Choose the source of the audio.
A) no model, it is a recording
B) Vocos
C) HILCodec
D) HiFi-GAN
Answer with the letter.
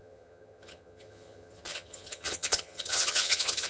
D